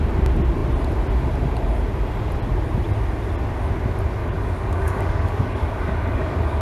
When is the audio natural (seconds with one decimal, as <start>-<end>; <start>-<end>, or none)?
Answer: 0.0-4.2